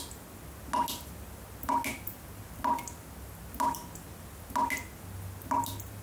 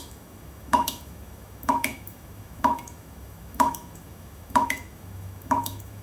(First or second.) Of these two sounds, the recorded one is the first